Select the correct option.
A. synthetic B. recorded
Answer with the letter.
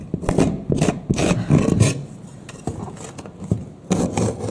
B